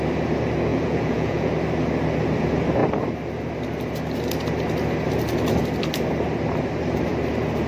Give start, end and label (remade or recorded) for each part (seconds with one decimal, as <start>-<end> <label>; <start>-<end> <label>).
0.0-0.7 recorded; 0.7-1.5 remade; 1.5-7.7 recorded